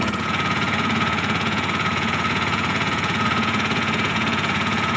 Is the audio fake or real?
fake